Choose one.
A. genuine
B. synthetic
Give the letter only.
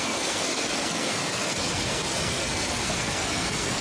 B